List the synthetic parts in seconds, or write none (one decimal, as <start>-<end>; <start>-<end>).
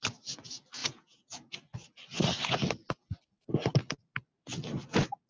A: 0.8-1.5